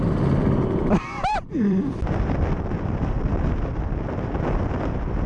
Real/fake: fake